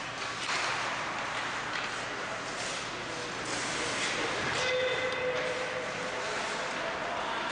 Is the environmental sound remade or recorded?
recorded